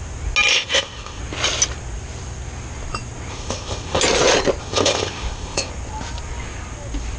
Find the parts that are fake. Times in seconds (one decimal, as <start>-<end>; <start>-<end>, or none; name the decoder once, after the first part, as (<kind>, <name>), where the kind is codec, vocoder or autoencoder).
0.5-1.2 (codec, ZipCodec); 3.3-4.0; 4.6-5.7